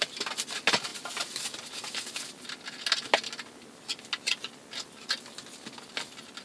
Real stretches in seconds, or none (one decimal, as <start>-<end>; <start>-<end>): 0.0-6.4